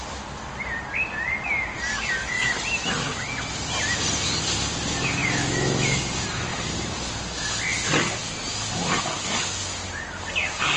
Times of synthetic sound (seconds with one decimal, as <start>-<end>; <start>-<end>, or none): 2.2-3.1; 5.2-6.0